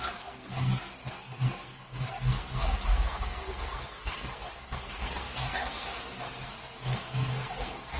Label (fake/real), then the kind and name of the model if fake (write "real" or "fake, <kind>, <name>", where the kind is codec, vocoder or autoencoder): fake, codec, SNAC